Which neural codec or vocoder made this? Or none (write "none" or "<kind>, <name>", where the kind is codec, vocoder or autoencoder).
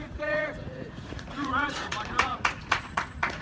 vocoder, Vocos